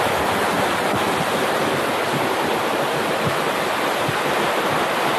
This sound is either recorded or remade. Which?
recorded